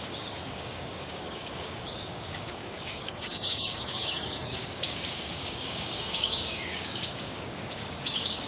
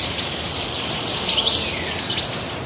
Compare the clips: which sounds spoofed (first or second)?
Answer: first